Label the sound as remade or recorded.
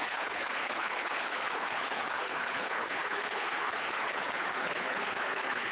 remade